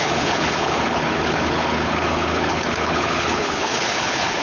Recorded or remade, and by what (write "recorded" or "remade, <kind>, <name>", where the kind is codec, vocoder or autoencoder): remade, codec, HILCodec